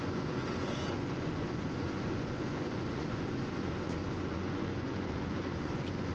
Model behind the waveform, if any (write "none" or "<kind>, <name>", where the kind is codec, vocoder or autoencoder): vocoder, Vocos